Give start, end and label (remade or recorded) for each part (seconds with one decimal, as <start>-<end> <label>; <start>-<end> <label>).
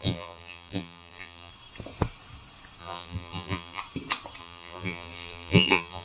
0.0-1.5 remade; 1.5-2.8 recorded; 2.8-3.8 remade; 3.8-4.4 recorded; 4.4-6.0 remade